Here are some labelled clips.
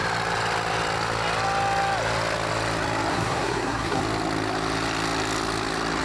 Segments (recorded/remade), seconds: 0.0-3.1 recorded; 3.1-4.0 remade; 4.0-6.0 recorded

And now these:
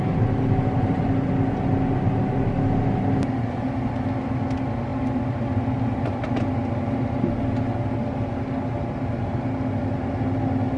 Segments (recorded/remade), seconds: 0.0-10.8 recorded

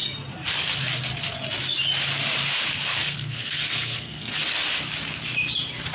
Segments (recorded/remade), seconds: 0.0-3.0 recorded; 3.0-4.3 remade; 4.3-5.9 recorded

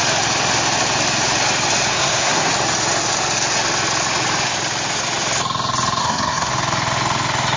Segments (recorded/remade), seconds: 0.0-1.9 recorded; 1.9-2.5 remade; 2.5-6.0 recorded; 6.0-6.5 remade; 6.5-7.6 recorded

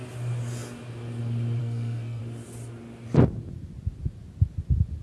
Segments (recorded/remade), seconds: 0.0-1.6 recorded; 1.6-2.2 remade; 2.2-5.0 recorded